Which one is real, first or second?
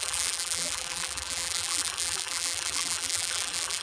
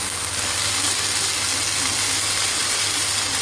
second